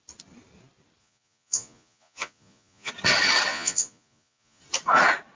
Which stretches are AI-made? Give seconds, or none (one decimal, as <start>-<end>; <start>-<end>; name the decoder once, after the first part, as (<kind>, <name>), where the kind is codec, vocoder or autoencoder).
1.0-2.9 (vocoder, Vocos); 3.5-4.6